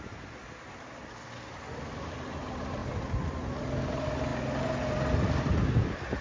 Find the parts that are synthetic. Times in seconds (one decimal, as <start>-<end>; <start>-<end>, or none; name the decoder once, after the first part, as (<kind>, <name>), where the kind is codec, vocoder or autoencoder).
none